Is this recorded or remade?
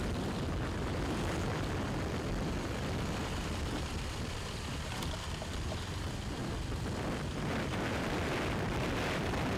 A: remade